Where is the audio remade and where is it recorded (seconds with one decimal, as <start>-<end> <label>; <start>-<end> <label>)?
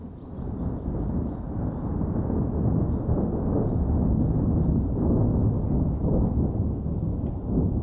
0.0-6.0 recorded; 6.0-6.6 remade; 6.6-7.8 recorded